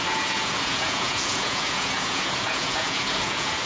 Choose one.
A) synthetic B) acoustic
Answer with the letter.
A